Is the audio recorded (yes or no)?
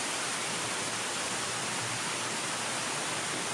no